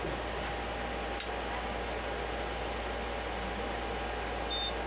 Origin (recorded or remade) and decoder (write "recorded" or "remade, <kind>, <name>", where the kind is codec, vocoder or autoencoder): recorded